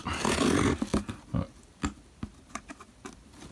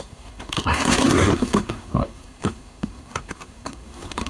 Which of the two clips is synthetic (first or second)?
second